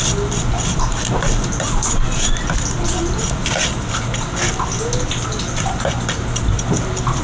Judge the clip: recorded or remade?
recorded